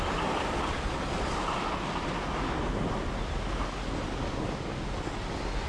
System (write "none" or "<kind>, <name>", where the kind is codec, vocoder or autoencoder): none